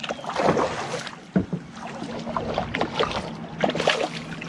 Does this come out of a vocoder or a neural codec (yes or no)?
no